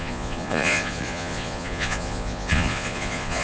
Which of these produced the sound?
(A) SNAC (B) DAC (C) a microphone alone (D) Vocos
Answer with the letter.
D